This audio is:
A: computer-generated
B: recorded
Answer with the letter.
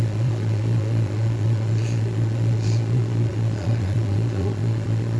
A